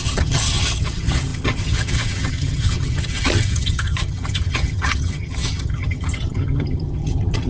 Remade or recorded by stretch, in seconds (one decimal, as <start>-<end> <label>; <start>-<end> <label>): 0.0-7.5 remade